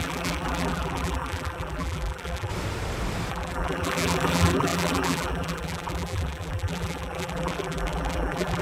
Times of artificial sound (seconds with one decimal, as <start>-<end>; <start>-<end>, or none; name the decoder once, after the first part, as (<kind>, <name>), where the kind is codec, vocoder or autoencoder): 0.0-2.5 (vocoder, BigVGAN v2); 3.3-8.6